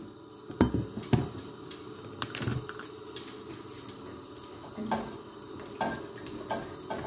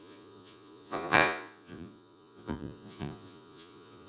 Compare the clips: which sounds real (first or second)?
first